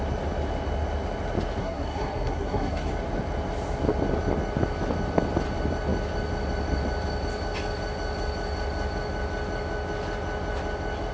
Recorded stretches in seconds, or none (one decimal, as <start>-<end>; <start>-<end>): 0.0-1.6; 2.9-11.1